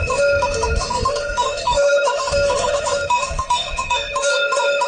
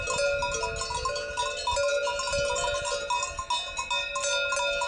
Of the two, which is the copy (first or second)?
first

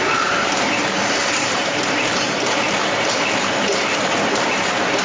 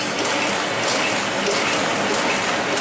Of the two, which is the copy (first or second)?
first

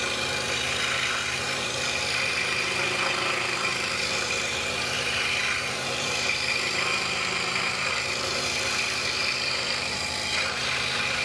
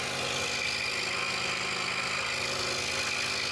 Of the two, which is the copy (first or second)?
first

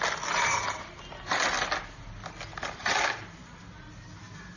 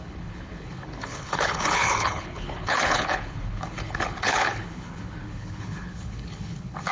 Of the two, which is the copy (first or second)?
second